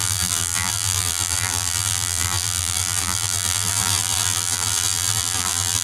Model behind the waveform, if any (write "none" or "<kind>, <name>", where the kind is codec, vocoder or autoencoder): vocoder, BigVGAN v2